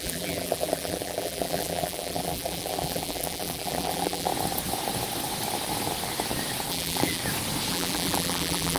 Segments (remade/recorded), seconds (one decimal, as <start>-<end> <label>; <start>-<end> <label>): 0.0-4.3 remade; 4.3-6.7 recorded; 6.7-7.2 remade; 7.2-7.7 recorded; 7.7-8.8 remade